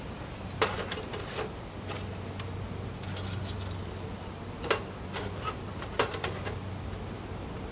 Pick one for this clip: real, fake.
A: real